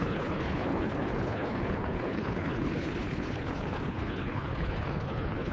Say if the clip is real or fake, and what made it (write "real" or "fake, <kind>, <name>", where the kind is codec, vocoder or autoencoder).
fake, codec, HILCodec